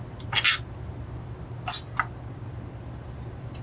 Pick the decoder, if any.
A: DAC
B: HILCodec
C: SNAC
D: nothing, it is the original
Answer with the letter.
D